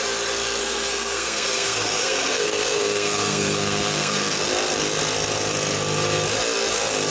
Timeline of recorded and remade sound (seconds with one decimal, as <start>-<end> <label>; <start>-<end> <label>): 0.0-0.6 recorded; 0.6-4.5 remade; 4.5-7.1 recorded